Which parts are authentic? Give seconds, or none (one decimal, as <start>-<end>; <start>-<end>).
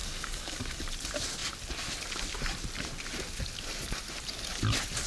0.8-5.1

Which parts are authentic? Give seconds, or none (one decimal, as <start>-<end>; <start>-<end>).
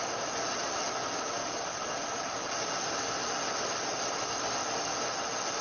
0.0-5.6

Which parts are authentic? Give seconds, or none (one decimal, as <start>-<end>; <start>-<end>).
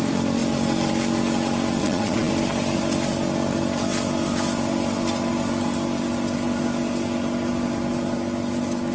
0.0-1.8; 2.3-8.9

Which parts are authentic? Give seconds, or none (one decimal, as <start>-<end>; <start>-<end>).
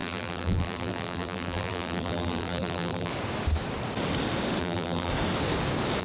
3.1-4.6; 5.1-6.0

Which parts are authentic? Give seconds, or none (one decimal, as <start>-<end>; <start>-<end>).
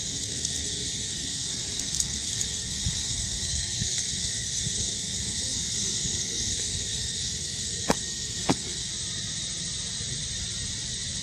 8.9-11.2